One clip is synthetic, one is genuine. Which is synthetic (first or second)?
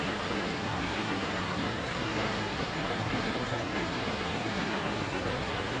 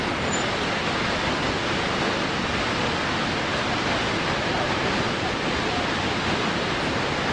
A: first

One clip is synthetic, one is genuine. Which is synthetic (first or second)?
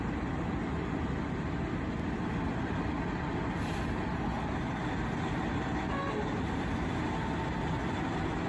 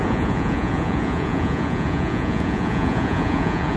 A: second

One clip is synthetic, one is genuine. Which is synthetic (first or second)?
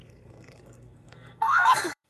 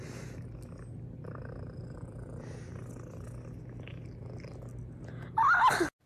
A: first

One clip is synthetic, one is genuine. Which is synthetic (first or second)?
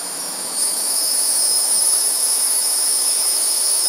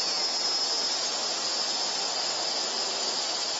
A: first